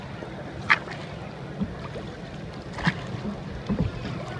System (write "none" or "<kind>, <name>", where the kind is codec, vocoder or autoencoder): vocoder, BigVGAN v2